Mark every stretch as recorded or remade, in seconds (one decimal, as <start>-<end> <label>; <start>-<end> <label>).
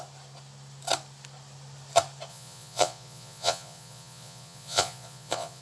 0.0-2.3 recorded; 2.3-5.6 remade